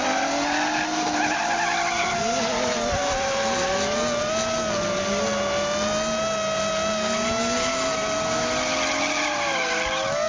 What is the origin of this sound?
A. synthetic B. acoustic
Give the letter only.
B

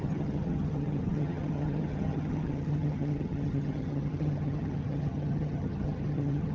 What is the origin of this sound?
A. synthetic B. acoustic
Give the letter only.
A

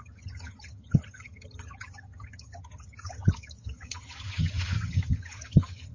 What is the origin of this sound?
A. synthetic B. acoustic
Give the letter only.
A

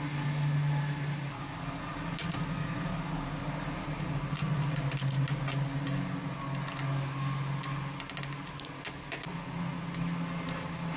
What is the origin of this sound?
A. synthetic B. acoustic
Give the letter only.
B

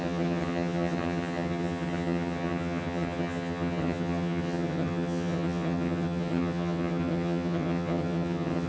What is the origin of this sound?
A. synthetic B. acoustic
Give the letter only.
A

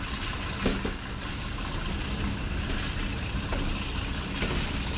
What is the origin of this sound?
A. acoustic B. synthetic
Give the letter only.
A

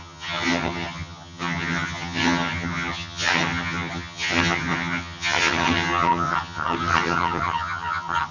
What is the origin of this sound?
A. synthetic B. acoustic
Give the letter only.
A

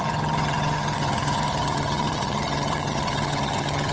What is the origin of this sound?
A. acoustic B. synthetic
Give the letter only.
B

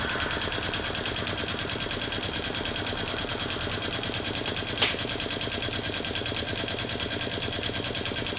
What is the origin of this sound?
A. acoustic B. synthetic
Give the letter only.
A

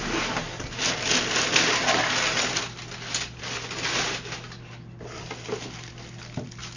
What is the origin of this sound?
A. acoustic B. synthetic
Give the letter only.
A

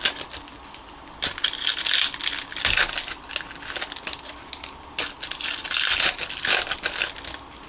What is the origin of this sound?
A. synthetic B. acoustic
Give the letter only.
B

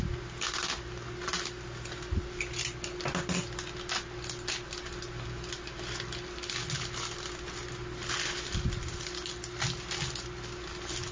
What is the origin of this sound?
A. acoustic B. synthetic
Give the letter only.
A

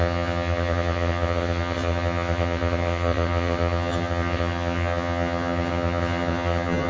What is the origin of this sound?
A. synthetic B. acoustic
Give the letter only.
A